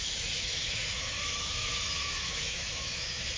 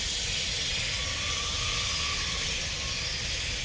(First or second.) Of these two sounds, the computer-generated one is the first